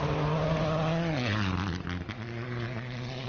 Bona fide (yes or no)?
yes